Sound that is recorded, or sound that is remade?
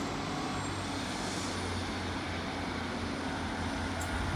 recorded